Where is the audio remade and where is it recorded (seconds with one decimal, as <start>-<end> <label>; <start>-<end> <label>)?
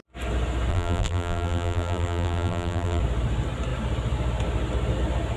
0.0-0.7 recorded; 0.7-3.0 remade; 3.0-5.4 recorded